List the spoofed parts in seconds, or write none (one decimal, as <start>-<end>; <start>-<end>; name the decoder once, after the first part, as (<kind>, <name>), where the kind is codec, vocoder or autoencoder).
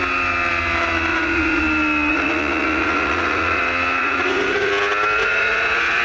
1.1-1.6 (vocoder, Vocos); 2.1-3.6; 4.0-4.7; 5.2-6.0